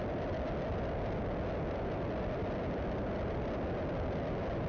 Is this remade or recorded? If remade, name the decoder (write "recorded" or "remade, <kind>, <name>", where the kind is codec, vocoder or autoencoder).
recorded